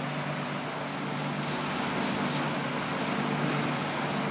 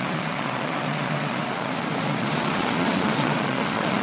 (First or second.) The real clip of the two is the first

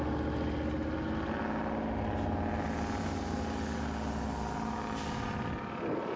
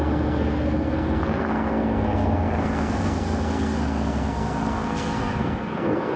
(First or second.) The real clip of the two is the first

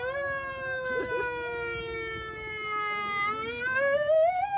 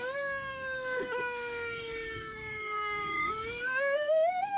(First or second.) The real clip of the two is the first